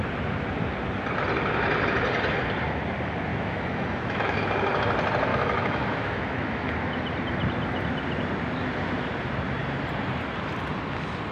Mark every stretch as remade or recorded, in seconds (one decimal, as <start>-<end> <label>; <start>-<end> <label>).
0.0-3.3 recorded; 3.3-4.4 remade; 4.4-5.3 recorded; 5.3-6.7 remade; 6.7-11.3 recorded